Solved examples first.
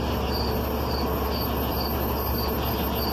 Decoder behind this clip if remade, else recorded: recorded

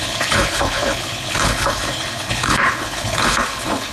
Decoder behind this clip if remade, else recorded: remade, codec, HILCodec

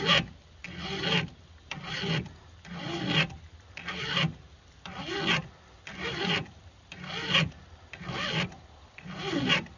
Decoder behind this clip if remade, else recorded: recorded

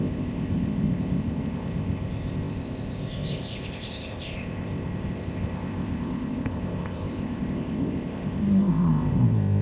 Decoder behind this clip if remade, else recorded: remade, codec, ZipCodec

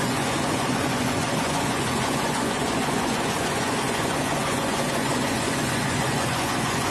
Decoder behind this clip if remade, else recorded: remade, vocoder, Vocos